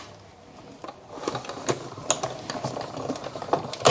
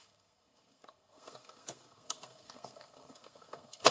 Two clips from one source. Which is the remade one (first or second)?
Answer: second